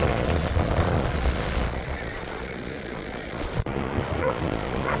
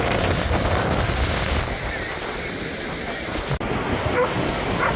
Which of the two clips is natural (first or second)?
second